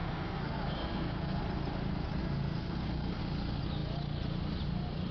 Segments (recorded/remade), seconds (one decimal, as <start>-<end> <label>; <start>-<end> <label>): 0.0-1.4 remade; 1.4-2.2 recorded; 2.2-3.2 remade; 3.2-5.1 recorded